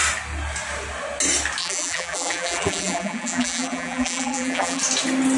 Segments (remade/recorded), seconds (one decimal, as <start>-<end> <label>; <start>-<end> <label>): 0.0-1.6 recorded; 1.6-4.8 remade; 4.8-5.4 recorded